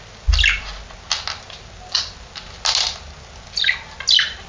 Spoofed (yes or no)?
no